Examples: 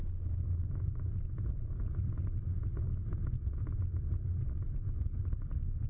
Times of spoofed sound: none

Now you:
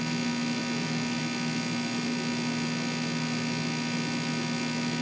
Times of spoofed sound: none